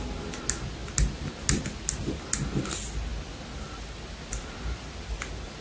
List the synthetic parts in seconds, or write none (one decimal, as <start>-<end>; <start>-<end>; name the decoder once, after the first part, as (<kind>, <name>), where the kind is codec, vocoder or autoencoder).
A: none